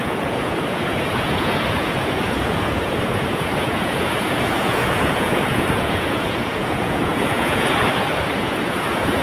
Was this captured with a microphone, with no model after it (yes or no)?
no